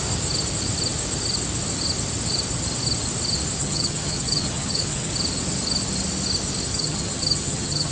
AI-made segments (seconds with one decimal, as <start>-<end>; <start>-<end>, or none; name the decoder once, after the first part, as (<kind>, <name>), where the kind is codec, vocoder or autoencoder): 3.6-5.1 (vocoder, HiFi-GAN); 6.7-7.9